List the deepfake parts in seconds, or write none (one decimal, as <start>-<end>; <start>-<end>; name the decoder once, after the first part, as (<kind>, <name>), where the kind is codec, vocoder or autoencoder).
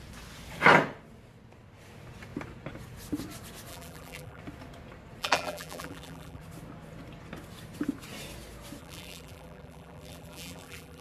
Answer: 3.7-4.4 (vocoder, BigVGAN v2); 5.2-6.4; 8.8-11.0